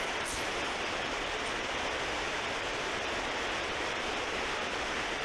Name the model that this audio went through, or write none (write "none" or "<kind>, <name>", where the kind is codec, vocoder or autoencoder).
vocoder, BigVGAN v2